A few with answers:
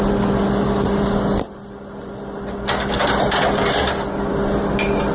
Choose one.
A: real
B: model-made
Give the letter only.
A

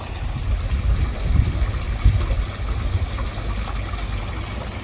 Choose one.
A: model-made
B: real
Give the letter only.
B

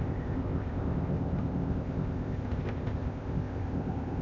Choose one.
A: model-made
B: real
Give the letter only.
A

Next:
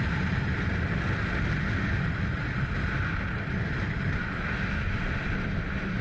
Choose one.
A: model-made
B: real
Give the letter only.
B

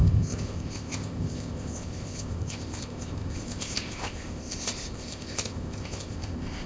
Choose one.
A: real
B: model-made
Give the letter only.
B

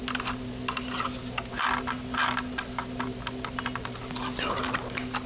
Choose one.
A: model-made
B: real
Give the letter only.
B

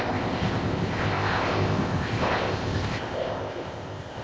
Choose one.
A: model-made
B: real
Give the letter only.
A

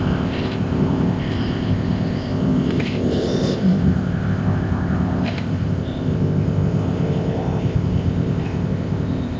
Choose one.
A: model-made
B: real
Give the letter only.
A